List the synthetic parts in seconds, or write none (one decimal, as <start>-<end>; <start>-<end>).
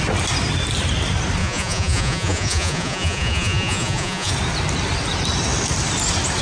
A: 1.4-4.3